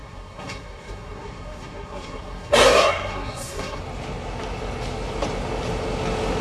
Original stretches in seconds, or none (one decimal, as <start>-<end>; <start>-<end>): 3.8-6.4